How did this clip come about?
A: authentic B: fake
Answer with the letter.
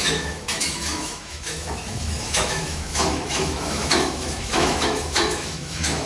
B